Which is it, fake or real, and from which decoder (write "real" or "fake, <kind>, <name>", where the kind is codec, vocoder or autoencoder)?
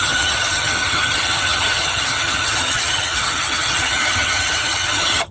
fake, vocoder, HiFi-GAN